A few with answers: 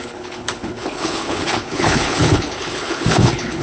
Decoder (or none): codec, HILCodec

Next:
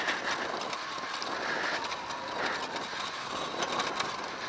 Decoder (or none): none